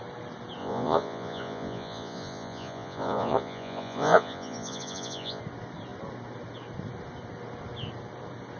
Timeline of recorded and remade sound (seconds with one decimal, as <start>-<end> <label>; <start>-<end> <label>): 0.0-0.6 recorded; 0.6-5.4 remade; 5.4-8.6 recorded